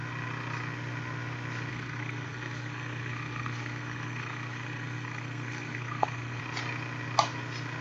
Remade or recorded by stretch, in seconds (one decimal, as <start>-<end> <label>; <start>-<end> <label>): 0.0-1.7 recorded; 1.7-6.4 remade; 6.4-7.8 recorded